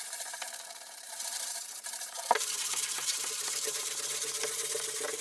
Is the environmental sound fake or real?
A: fake